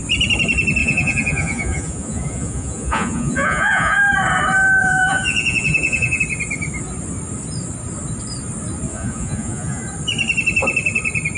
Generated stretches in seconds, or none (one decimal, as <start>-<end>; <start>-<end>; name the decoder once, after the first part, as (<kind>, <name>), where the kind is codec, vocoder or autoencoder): 0.8-4.0 (vocoder, Vocos); 4.8-6.2; 8.9-9.8